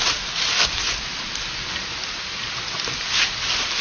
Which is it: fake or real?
real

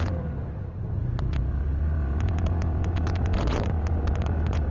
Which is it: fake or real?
fake